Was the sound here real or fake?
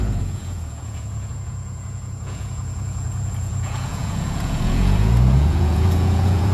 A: fake